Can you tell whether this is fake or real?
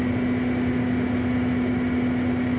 real